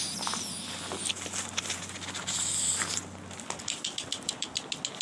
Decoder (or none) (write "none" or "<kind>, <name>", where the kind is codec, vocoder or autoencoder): none